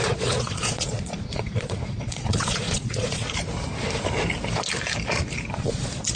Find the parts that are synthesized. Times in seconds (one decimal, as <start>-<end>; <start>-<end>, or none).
0.0-3.2; 5.5-6.2